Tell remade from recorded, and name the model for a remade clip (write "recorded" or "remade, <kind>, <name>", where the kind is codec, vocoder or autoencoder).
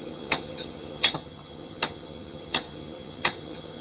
remade, vocoder, HiFi-GAN